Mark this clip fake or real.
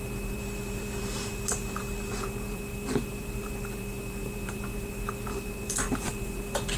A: fake